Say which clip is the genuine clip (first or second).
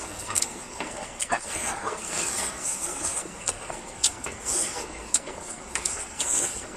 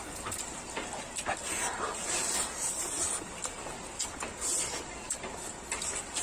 second